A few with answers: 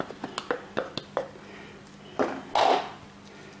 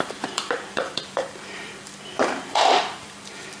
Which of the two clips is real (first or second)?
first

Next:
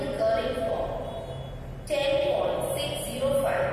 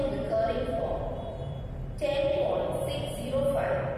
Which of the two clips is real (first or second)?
first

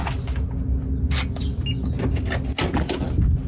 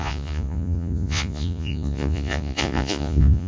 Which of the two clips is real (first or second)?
first